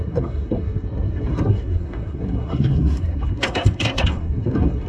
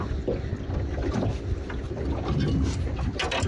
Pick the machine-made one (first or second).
first